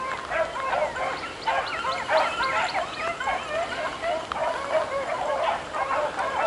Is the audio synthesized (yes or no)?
no